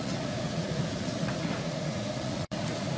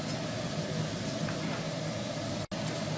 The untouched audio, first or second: second